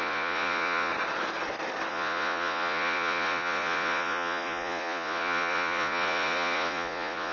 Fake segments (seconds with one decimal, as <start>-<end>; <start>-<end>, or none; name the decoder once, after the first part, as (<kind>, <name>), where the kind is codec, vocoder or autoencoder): 0.0-0.9 (vocoder, Vocos); 1.9-7.3